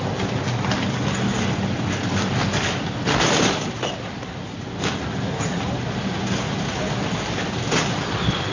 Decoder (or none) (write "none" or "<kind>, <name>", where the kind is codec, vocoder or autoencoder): none